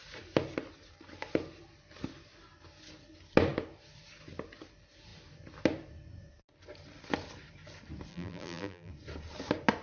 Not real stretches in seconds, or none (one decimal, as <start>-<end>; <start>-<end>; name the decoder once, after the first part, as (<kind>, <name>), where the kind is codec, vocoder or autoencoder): 8.1-8.9 (vocoder, BigVGAN v2)